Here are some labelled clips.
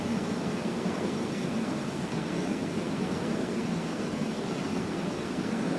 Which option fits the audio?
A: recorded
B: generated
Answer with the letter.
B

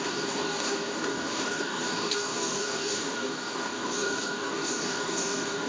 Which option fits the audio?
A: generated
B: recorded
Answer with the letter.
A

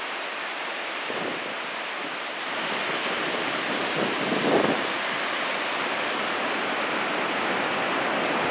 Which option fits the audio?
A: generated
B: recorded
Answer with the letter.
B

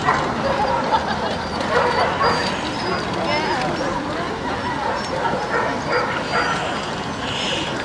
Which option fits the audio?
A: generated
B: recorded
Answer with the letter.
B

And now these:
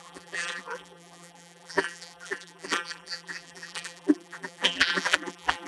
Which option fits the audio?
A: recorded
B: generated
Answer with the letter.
B